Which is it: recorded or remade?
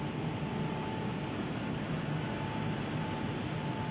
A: recorded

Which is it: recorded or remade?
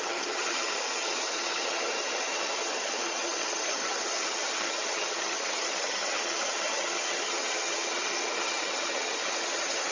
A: remade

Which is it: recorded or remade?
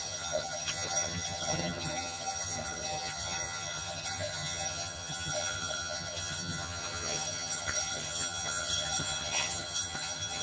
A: remade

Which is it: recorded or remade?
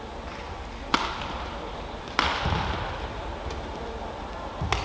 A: recorded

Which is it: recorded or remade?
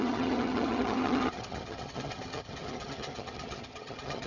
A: remade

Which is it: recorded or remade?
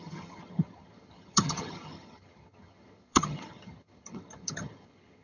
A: remade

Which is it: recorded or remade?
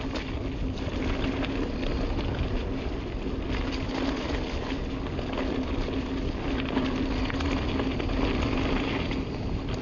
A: recorded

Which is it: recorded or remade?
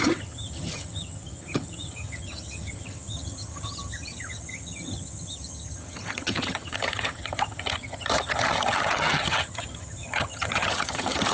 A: remade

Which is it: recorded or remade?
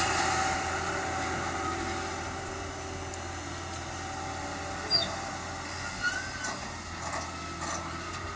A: recorded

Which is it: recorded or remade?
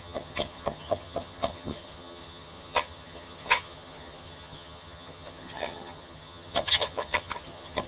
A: remade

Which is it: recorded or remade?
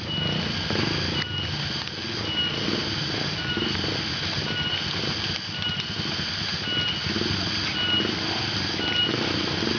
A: recorded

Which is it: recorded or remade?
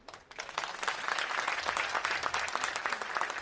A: recorded